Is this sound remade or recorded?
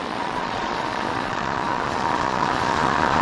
remade